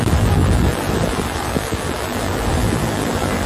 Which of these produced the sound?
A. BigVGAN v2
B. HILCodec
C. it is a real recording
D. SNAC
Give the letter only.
A